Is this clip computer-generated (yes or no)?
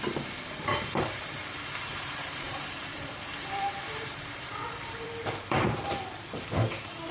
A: yes